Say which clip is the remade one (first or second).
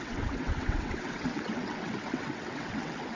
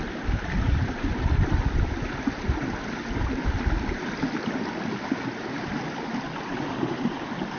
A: first